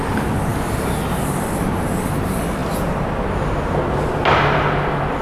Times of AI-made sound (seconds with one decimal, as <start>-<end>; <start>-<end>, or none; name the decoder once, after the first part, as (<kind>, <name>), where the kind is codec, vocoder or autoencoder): none